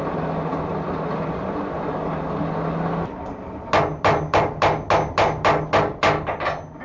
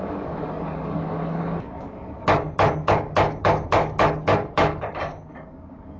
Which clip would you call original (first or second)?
first